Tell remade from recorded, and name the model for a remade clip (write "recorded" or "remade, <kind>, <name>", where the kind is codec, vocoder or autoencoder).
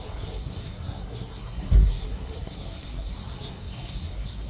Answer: remade, codec, SNAC